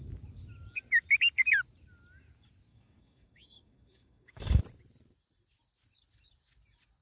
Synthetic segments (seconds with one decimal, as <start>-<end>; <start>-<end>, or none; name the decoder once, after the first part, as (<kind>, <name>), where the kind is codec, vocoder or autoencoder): 2.7-4.6 (codec, DAC)